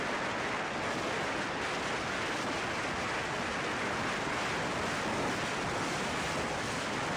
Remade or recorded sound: recorded